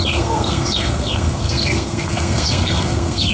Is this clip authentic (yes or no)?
no